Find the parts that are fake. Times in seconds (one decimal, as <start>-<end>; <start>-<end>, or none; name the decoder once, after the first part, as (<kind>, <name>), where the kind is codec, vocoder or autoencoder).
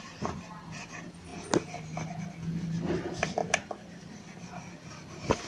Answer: 0.0-1.3 (vocoder, BigVGAN v2); 2.5-3.4; 4.8-5.5